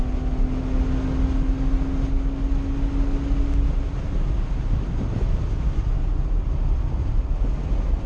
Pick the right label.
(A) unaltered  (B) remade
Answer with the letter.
A